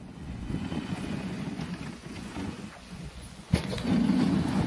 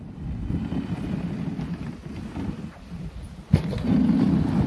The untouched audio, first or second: second